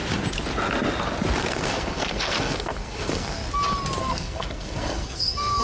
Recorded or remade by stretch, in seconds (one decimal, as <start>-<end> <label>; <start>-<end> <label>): 0.0-1.4 recorded; 1.4-3.4 remade; 3.4-4.0 recorded; 4.0-5.6 remade